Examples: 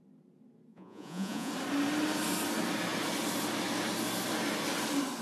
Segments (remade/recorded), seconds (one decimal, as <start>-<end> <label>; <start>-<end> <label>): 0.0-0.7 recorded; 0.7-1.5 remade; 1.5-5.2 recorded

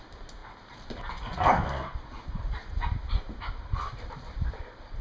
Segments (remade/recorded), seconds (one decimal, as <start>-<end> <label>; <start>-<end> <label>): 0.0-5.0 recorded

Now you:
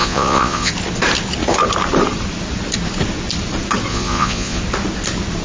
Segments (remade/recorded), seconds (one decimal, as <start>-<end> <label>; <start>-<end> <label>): 0.0-0.7 remade; 0.7-3.9 recorded; 3.9-4.6 remade; 4.6-5.4 recorded

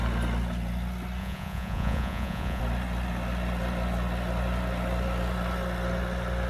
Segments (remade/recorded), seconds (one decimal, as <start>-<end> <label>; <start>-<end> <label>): 0.0-1.2 recorded; 1.2-2.6 remade; 2.6-6.5 recorded

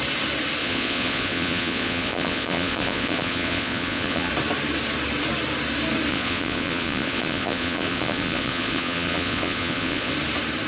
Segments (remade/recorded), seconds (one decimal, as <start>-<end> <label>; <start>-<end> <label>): 0.0-0.6 recorded; 0.6-4.3 remade; 4.3-6.1 recorded; 6.1-10.1 remade; 10.1-10.7 recorded

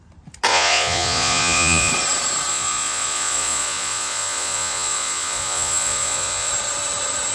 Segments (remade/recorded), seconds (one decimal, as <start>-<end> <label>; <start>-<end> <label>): 0.0-0.5 recorded; 0.5-1.9 remade; 1.9-2.5 recorded; 2.5-6.5 remade; 6.5-7.3 recorded